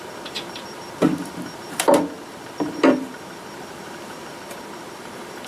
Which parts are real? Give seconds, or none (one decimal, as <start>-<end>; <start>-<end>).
none

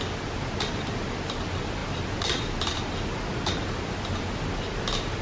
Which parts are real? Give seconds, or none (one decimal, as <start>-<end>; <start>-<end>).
0.0-5.2

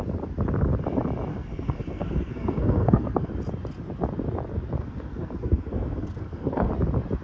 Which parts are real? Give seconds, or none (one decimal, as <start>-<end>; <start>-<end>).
0.0-1.3; 3.3-4.8; 6.7-7.2

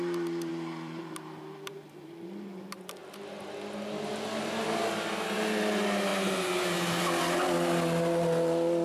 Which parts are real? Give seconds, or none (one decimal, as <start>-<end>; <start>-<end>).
0.0-0.5; 1.7-8.8

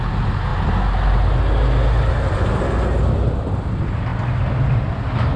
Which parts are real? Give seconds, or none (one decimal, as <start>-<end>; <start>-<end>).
0.0-5.4